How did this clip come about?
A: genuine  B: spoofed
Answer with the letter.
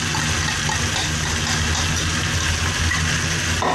A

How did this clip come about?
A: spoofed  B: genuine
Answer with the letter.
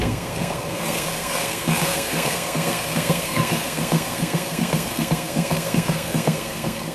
A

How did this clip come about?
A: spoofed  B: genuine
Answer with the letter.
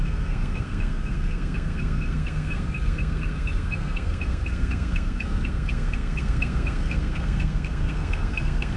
A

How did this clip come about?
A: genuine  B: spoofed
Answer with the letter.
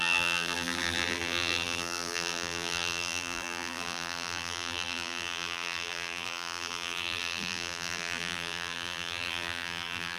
B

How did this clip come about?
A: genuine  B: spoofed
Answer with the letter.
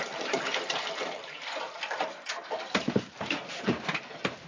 B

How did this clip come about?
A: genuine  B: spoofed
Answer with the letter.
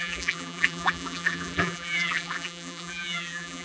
B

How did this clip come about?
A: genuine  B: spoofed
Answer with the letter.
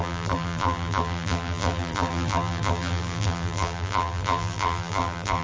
B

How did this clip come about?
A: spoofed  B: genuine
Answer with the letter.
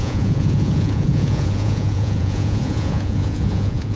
A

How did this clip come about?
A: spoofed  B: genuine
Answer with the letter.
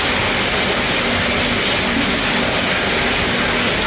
B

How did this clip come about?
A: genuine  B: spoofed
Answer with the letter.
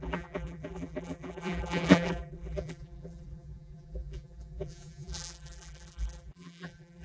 B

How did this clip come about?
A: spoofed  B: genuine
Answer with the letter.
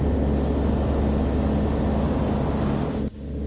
B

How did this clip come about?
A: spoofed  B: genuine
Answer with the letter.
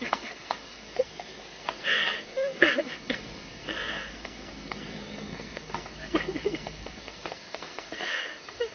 A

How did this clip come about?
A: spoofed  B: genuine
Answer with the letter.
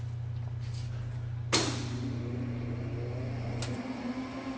B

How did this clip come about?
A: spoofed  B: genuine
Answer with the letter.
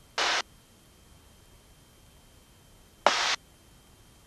B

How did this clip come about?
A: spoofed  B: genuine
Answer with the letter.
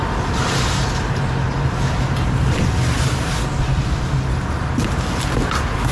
B